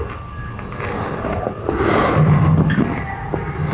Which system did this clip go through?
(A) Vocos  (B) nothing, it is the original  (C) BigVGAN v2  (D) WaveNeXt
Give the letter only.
B